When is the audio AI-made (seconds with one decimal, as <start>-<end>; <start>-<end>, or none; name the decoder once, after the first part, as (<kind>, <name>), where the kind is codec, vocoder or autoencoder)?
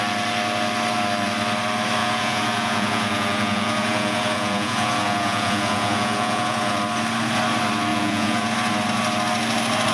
2.0-6.8 (vocoder, Vocos); 7.9-8.5